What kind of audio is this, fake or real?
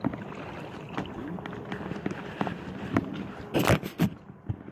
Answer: real